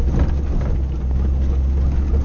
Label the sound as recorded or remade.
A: recorded